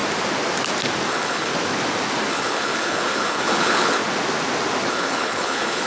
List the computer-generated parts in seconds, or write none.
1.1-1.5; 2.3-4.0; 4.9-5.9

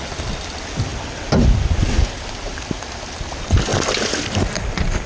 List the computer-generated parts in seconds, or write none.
none

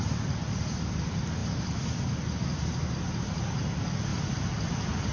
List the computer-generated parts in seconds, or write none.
0.4-1.0; 4.1-5.1

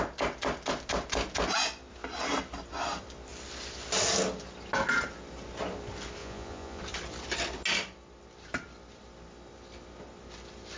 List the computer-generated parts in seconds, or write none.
6.2-6.8